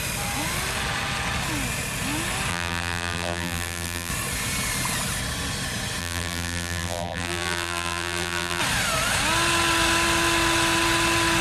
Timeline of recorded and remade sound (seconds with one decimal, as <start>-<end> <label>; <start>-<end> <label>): 0.0-2.5 recorded; 2.5-4.1 remade; 4.1-6.0 recorded; 6.0-8.6 remade; 8.6-11.4 recorded